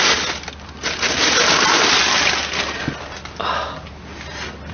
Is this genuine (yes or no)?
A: yes